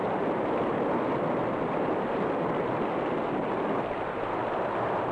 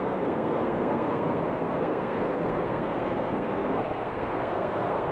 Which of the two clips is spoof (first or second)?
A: second